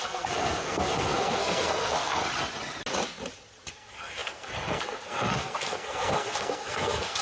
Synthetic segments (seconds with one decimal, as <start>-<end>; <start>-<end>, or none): 0.0-2.2; 3.7-7.2